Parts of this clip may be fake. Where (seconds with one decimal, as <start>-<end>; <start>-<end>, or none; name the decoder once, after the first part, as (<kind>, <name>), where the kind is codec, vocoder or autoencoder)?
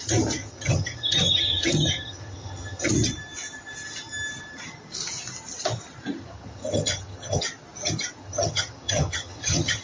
0.4-2.9 (vocoder, HiFi-GAN); 6.2-7.4; 8.2-9.8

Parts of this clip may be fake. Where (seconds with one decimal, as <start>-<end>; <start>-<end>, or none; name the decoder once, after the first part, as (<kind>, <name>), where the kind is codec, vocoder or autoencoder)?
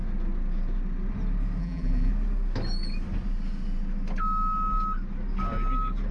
1.6-2.1 (vocoder, BigVGAN v2)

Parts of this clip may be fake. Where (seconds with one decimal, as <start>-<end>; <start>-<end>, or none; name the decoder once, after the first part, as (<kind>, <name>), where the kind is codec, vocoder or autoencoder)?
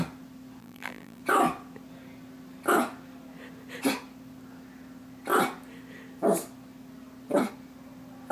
0.6-1.2 (vocoder, BigVGAN v2)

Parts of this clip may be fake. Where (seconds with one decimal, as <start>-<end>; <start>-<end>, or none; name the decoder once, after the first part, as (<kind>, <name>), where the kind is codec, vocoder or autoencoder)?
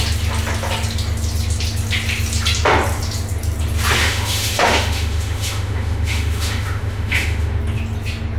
4.0-7.6 (autoencoder, DAC-VAE)